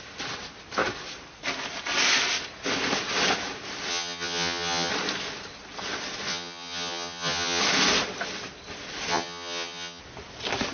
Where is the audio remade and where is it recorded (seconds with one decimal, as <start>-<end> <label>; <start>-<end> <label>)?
0.0-3.9 recorded; 3.9-4.9 remade; 4.9-6.3 recorded; 6.3-7.6 remade; 7.6-9.1 recorded; 9.1-10.0 remade; 10.0-10.7 recorded

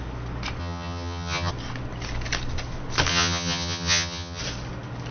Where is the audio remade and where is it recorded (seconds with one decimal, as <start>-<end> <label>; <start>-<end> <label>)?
0.0-0.6 recorded; 0.6-1.5 remade; 1.5-3.1 recorded; 3.1-4.4 remade; 4.4-5.1 recorded